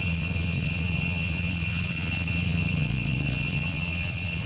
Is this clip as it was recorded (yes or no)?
no